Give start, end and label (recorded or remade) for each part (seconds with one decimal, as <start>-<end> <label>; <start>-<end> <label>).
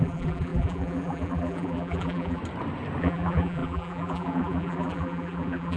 0.0-2.4 remade; 2.4-3.0 recorded; 3.0-5.8 remade